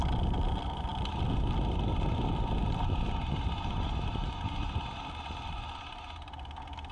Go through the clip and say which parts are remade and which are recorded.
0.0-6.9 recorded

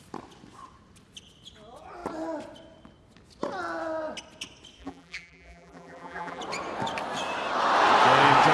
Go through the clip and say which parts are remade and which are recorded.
0.0-4.8 recorded; 4.8-6.4 remade; 6.4-8.5 recorded

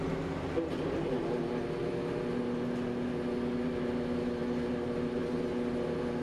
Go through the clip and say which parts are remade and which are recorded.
0.0-6.2 recorded

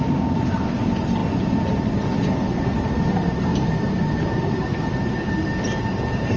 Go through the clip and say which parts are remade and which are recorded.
0.0-3.5 recorded; 3.5-5.8 remade; 5.8-6.4 recorded

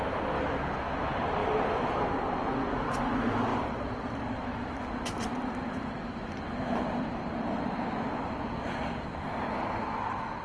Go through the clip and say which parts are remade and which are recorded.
0.0-1.4 recorded; 1.4-2.3 remade; 2.3-3.5 recorded; 3.5-4.9 remade; 4.9-10.4 recorded